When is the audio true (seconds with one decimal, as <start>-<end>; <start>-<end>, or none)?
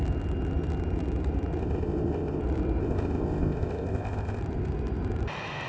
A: 0.0-1.6; 2.4-2.8; 4.4-5.7